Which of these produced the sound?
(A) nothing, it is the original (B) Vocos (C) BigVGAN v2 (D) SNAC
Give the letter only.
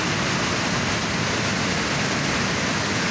A